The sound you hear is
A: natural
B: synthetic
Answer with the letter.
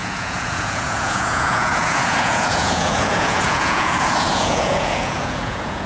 B